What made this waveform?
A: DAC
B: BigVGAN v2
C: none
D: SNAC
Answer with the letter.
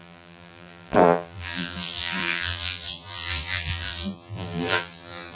B